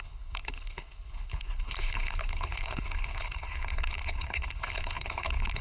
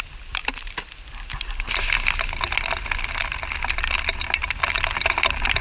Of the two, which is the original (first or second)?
second